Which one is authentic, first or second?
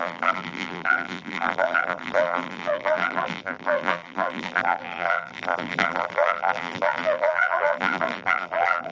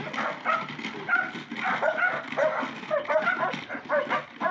second